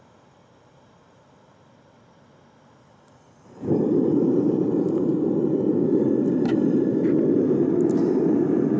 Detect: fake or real real